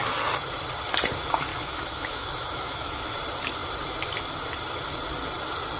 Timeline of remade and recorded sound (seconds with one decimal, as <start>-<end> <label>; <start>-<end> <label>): 0.0-1.5 recorded; 1.5-3.0 remade; 3.0-5.8 recorded